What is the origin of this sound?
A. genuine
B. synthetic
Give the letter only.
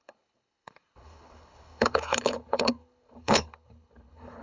B